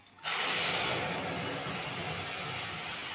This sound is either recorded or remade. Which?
recorded